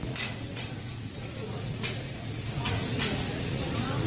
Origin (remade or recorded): remade